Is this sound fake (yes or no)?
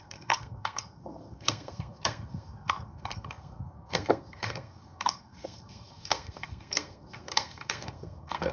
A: yes